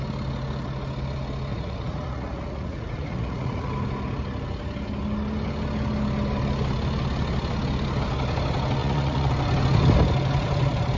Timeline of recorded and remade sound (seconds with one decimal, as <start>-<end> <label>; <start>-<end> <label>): 0.0-1.5 recorded; 1.5-3.7 remade; 3.7-8.8 recorded; 8.8-9.3 remade; 9.3-11.0 recorded